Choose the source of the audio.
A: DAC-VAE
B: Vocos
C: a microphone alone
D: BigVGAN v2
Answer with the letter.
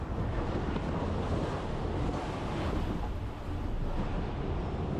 C